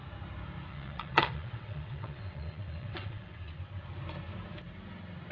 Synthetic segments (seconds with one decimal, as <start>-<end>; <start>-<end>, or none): 0.7-3.6